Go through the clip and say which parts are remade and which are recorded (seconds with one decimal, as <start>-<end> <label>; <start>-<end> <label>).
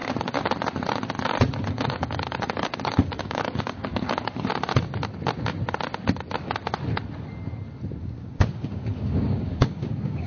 0.0-1.7 recorded; 1.7-4.5 remade; 4.5-8.0 recorded; 8.0-10.3 remade